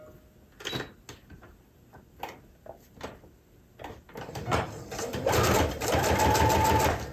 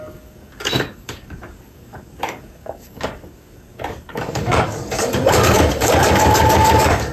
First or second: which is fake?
second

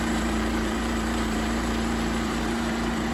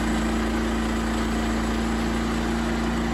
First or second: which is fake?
first